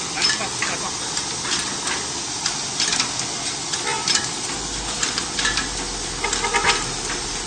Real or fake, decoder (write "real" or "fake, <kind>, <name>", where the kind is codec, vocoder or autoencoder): real